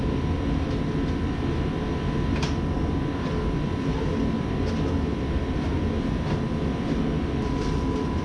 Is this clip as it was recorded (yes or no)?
yes